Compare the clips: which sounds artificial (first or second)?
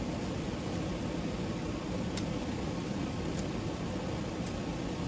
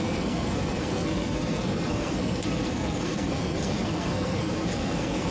second